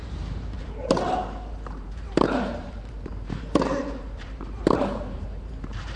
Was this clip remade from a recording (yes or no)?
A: yes